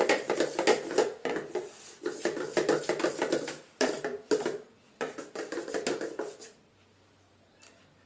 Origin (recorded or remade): recorded